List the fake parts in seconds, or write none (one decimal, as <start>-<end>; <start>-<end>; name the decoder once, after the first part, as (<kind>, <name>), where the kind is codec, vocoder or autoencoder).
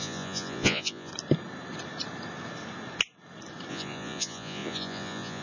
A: 0.0-1.1 (vocoder, Vocos); 3.7-5.4